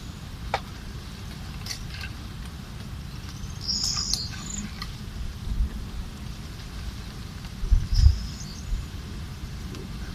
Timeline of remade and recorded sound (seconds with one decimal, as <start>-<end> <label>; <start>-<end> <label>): 0.0-10.1 recorded